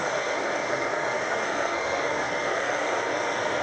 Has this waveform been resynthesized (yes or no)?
yes